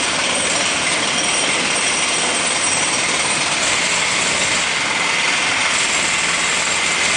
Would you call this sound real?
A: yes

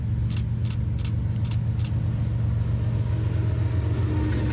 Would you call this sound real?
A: yes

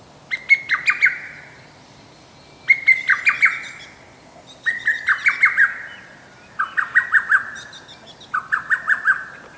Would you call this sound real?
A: yes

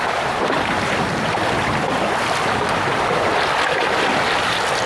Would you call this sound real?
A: yes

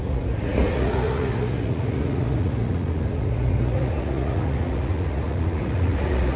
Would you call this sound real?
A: no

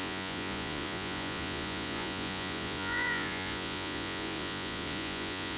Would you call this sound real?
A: no